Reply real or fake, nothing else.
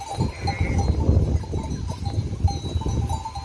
real